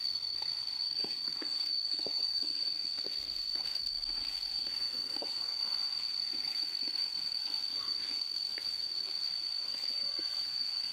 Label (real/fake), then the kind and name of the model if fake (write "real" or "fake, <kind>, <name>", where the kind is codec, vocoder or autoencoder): fake, codec, SNAC